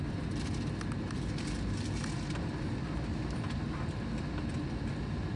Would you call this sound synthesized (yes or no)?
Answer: no